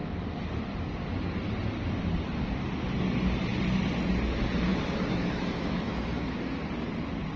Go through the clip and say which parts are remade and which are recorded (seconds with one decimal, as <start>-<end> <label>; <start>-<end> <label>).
0.0-4.7 recorded; 4.7-6.4 remade; 6.4-7.4 recorded